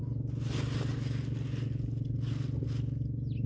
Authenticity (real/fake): real